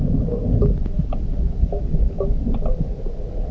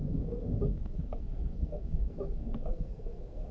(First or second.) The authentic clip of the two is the first